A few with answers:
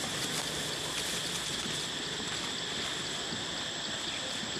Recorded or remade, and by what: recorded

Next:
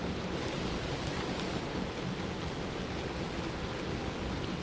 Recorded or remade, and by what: recorded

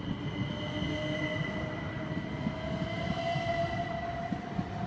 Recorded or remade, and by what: recorded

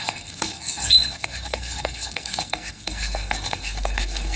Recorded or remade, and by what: remade, codec, SNAC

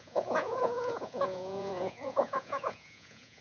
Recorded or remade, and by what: remade, vocoder, Vocos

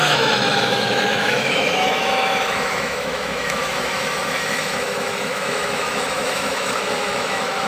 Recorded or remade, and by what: remade, autoencoder, DAC-VAE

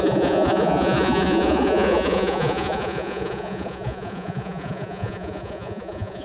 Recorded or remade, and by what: remade, vocoder, Vocos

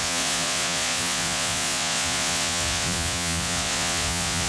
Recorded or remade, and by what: remade, vocoder, Vocos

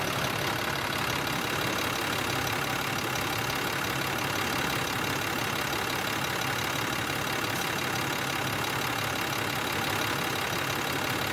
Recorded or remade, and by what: recorded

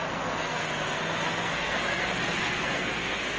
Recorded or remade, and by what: remade, codec, SNAC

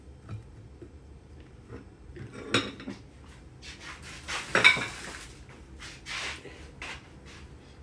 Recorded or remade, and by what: recorded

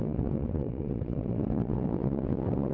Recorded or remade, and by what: remade, vocoder, WaveNeXt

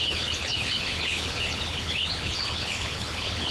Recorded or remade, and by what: remade, codec, HILCodec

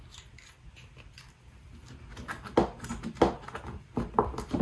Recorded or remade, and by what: recorded